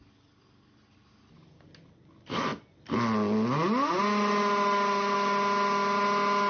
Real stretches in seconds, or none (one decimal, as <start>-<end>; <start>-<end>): 0.0-6.5